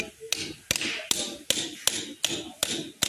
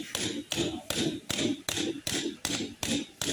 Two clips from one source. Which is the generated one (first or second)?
second